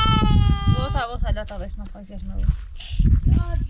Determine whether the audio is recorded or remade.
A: recorded